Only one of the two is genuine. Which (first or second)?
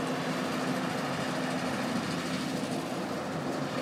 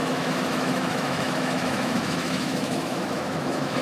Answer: first